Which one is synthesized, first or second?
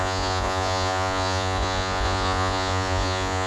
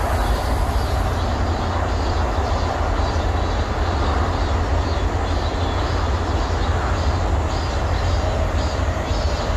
first